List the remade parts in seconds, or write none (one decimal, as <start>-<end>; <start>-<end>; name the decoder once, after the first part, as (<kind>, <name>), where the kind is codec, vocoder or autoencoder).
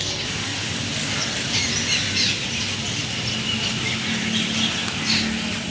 none